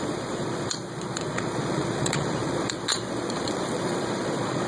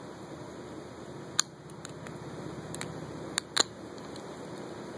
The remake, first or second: first